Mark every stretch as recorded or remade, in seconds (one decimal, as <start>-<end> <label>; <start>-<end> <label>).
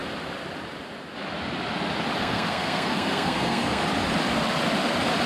0.0-2.2 recorded; 2.2-3.8 remade; 3.8-5.3 recorded